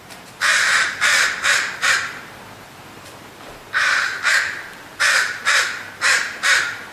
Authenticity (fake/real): fake